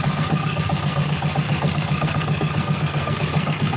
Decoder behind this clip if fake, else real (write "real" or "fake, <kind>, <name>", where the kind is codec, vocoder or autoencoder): fake, codec, SNAC